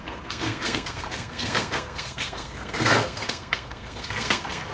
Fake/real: fake